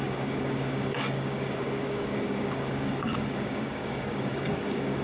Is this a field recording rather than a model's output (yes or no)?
no